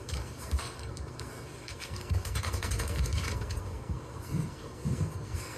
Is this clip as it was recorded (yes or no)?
no